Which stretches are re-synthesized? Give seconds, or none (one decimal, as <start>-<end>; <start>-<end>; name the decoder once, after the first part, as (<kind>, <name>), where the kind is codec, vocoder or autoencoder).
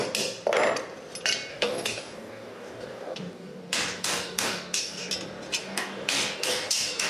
1.5-5.1 (codec, DAC); 5.6-7.1